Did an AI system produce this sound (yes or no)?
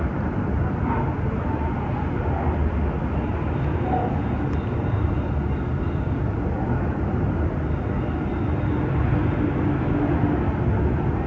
no